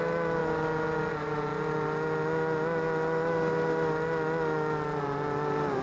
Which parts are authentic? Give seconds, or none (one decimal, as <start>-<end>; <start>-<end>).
0.0-5.8